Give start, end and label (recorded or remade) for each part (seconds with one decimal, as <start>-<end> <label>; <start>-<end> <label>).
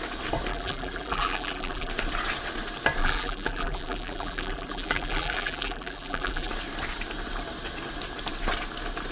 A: 0.0-0.5 recorded; 0.5-1.9 remade; 1.9-3.0 recorded; 3.0-6.5 remade; 6.5-9.1 recorded